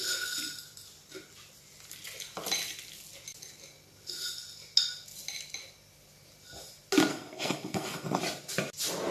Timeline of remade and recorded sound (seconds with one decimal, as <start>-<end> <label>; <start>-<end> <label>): 0.0-7.1 recorded; 7.1-8.2 remade; 8.2-9.1 recorded